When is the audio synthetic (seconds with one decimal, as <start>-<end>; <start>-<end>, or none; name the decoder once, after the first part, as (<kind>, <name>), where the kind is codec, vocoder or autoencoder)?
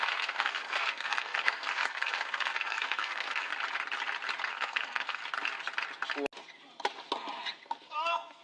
0.0-3.5 (codec, SNAC); 4.5-5.2; 7.6-8.4